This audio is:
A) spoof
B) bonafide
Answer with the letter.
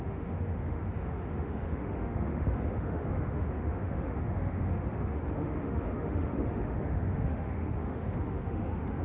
A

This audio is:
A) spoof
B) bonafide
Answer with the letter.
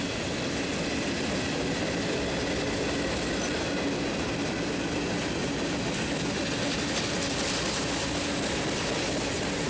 B